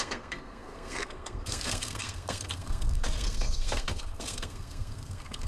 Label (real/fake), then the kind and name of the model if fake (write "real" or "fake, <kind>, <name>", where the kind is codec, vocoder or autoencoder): fake, codec, SNAC